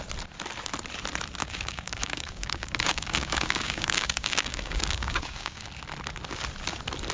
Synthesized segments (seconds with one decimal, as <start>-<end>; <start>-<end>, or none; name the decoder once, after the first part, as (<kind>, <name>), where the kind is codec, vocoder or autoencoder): 1.4-5.7 (codec, DAC)